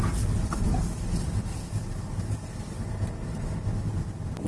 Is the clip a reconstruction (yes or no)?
no